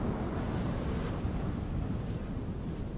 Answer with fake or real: fake